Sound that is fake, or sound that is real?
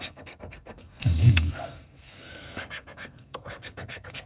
fake